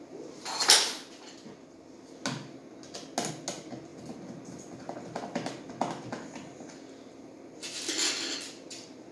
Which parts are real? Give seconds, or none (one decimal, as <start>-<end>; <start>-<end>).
0.0-9.1